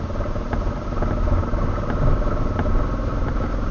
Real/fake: real